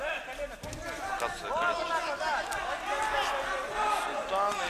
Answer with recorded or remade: recorded